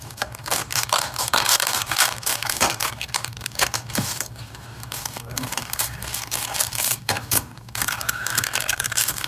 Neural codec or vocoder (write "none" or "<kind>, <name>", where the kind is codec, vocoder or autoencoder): codec, DAC